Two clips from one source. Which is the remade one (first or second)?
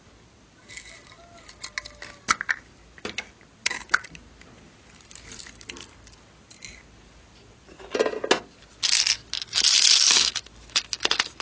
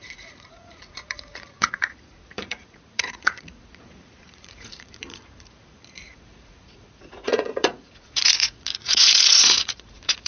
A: second